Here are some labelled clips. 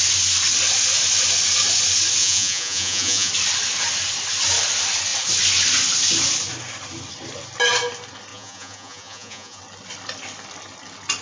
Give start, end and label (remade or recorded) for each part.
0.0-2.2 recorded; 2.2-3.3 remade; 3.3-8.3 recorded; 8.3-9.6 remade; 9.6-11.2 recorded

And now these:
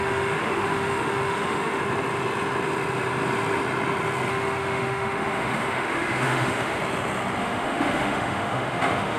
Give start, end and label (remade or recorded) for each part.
0.0-1.8 remade; 1.8-4.3 recorded; 4.3-6.8 remade; 6.8-7.4 recorded; 7.4-9.2 remade

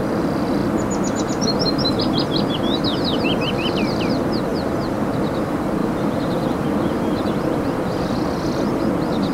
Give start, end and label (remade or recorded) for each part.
0.0-4.5 recorded; 4.5-5.0 remade; 5.0-5.8 recorded; 5.8-8.8 remade; 8.8-9.3 recorded

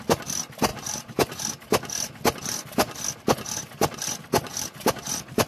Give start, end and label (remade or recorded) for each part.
0.0-5.5 recorded

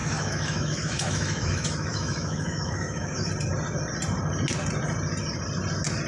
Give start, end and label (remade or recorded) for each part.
0.0-3.3 remade; 3.3-6.1 recorded

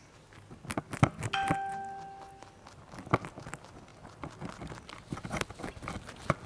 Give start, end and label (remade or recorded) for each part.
0.0-6.5 recorded

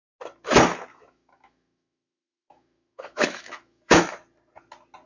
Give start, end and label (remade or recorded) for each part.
0.0-0.9 recorded; 0.9-4.0 remade; 4.0-5.1 recorded

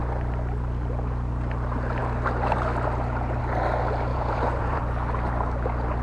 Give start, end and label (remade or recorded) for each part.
0.0-4.1 recorded; 4.1-4.8 remade; 4.8-6.0 recorded